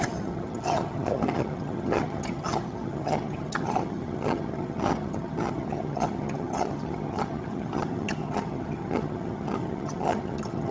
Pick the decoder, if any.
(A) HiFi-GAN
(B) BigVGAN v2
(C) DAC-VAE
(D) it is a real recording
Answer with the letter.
A